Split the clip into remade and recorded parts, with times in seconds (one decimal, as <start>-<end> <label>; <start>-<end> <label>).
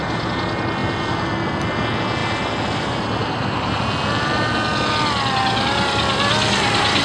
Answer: 0.0-2.2 recorded; 2.2-3.8 remade; 3.8-7.0 recorded